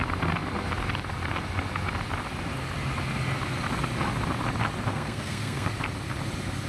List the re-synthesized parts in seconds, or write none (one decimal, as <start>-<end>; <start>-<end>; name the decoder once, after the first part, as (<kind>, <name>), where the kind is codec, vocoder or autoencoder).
4.9-5.7 (codec, SNAC)